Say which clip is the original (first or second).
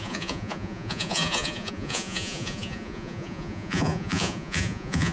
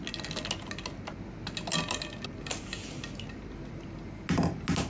second